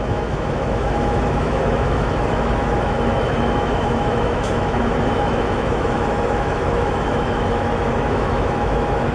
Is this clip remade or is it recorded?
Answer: remade